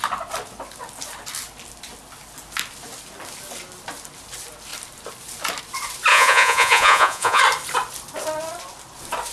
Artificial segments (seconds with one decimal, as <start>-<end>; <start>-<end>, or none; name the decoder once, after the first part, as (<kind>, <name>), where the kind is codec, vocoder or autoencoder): 6.1-7.4 (vocoder, Vocos)